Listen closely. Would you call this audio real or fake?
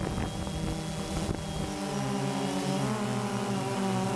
real